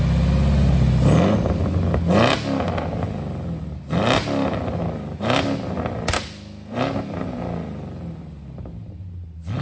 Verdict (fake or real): real